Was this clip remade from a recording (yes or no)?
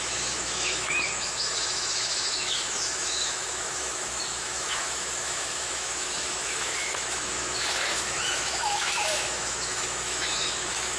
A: yes